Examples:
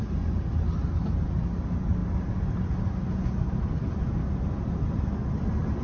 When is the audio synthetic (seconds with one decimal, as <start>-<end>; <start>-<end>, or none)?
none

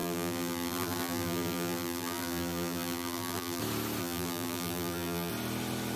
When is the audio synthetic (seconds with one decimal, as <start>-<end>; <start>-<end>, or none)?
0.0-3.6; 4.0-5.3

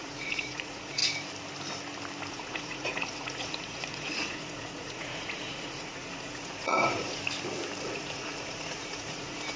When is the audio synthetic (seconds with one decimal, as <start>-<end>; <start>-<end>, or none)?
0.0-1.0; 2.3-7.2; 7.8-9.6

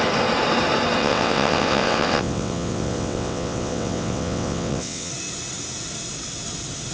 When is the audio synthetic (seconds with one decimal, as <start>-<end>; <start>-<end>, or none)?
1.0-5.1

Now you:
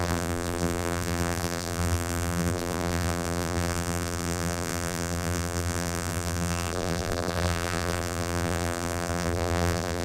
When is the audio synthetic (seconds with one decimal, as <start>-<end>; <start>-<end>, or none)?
0.0-10.0

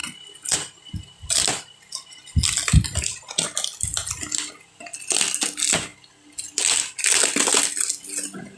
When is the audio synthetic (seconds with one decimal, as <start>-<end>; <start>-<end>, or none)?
none

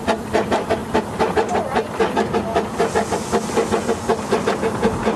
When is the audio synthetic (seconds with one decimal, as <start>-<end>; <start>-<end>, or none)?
none